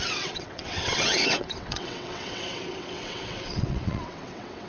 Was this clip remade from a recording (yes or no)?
yes